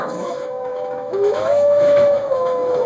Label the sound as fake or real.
fake